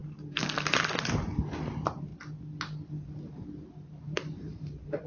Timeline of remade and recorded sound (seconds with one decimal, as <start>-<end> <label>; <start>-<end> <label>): 0.0-2.1 remade; 2.1-4.0 recorded; 4.0-5.1 remade